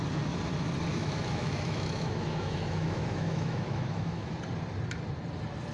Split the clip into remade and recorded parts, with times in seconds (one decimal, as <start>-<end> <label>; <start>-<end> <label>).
0.0-0.9 recorded; 0.9-4.3 remade; 4.3-5.7 recorded